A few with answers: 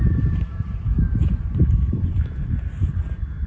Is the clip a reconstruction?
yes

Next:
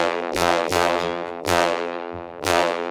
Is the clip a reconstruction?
yes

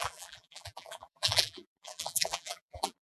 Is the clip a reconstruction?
yes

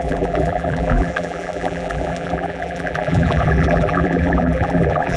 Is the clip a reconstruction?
yes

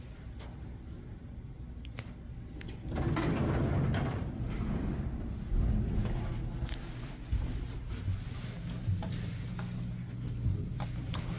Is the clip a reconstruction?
no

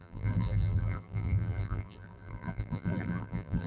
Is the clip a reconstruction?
yes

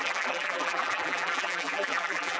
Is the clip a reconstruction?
yes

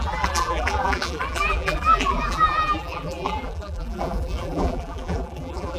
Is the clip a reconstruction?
yes